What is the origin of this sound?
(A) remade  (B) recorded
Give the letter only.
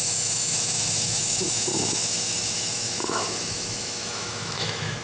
A